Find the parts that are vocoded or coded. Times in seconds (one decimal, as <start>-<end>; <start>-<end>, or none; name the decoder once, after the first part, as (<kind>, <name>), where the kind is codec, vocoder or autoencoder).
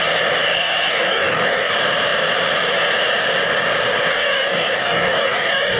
0.9-1.7 (codec, DAC); 4.1-5.8